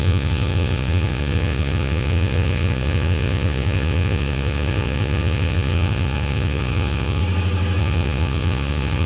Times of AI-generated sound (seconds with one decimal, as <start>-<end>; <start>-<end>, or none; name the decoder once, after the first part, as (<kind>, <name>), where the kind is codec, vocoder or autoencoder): 0.0-7.2 (vocoder, Vocos); 7.8-9.1